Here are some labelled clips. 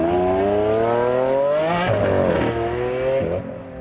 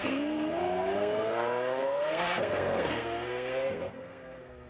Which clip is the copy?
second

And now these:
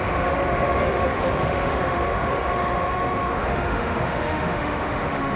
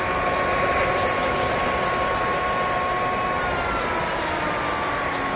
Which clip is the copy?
first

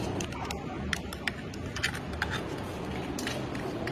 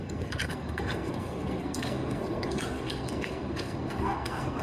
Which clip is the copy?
second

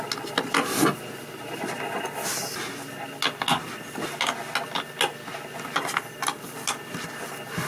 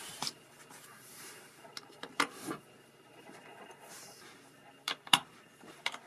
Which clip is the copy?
second